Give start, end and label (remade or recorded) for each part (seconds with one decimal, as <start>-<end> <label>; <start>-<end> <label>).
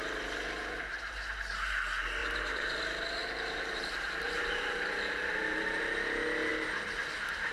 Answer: 0.0-2.2 recorded; 2.2-2.8 remade; 2.8-3.2 recorded; 3.2-5.8 remade; 5.8-7.5 recorded